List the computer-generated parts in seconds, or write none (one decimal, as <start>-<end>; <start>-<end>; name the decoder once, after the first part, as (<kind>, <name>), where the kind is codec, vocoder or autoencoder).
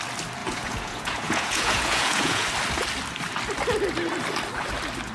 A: 0.4-2.5 (vocoder, Vocos)